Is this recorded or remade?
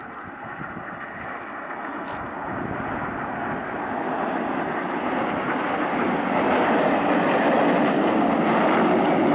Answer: recorded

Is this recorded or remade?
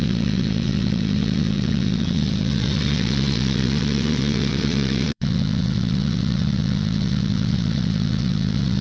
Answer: remade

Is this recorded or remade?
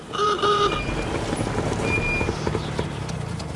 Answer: recorded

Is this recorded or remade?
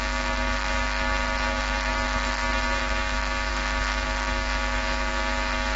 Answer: remade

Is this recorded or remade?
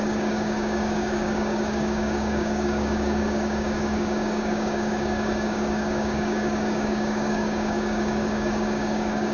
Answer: remade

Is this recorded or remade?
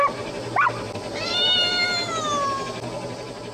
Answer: recorded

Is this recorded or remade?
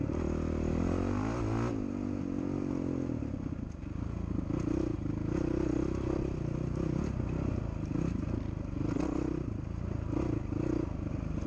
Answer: recorded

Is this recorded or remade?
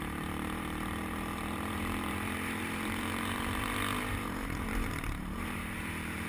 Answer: remade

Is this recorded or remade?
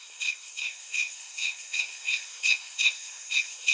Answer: remade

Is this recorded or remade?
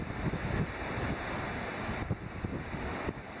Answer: recorded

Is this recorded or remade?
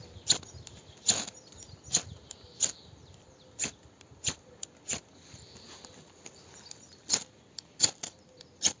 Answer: recorded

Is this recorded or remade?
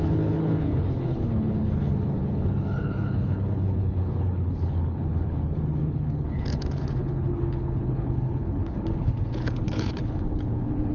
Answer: remade